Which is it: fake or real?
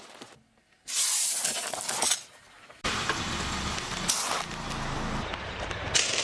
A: real